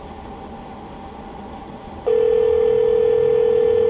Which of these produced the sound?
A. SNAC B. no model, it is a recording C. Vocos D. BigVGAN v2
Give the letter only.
B